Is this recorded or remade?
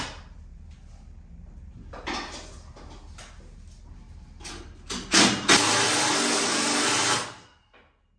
recorded